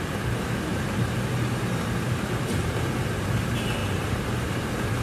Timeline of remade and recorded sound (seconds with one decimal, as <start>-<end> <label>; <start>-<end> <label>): 0.0-0.7 recorded; 0.7-3.4 remade; 3.4-3.8 recorded; 3.8-4.6 remade; 4.6-5.0 recorded